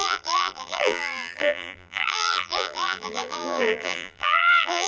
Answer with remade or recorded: remade